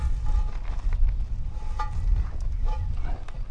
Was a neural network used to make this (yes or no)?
no